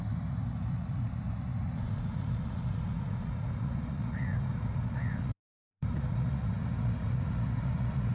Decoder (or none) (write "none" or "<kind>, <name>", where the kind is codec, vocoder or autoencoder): vocoder, Vocos